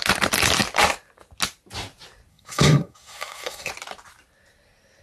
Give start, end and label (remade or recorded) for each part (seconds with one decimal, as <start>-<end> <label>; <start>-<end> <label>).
0.0-2.3 recorded; 2.3-3.7 remade; 3.7-5.0 recorded